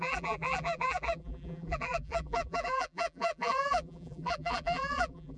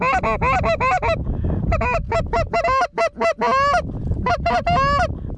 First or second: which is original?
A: second